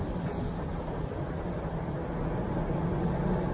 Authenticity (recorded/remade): recorded